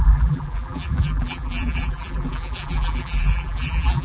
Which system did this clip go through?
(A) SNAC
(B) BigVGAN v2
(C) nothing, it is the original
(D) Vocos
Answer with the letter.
B